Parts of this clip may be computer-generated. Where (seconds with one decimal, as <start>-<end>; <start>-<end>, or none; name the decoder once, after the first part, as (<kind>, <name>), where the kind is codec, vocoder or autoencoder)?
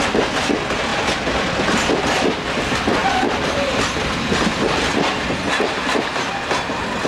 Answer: 3.0-3.8 (vocoder, BigVGAN v2)